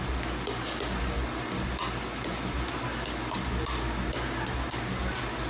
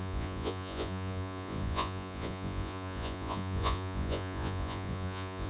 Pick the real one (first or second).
first